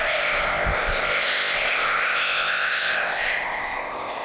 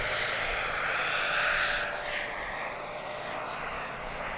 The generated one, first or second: first